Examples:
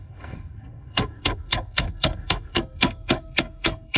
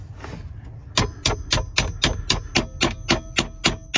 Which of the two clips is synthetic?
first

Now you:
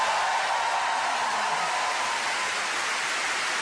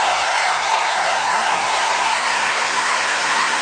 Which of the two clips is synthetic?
second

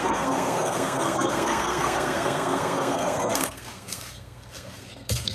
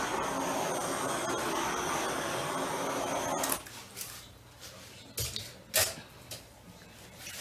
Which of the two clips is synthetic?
first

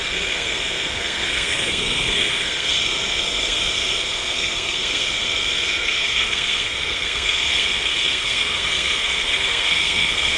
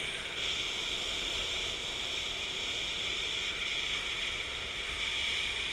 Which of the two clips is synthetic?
first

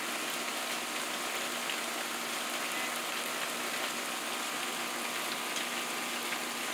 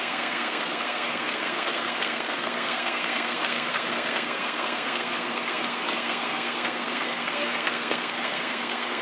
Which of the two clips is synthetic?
second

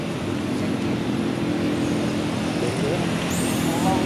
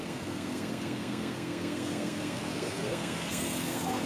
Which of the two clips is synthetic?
second